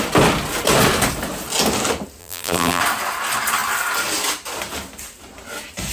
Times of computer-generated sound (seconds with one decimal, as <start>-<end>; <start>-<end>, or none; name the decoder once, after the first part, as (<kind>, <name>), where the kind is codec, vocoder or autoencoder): 2.2-2.8 (vocoder, BigVGAN v2)